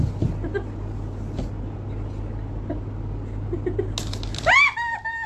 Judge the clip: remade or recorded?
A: recorded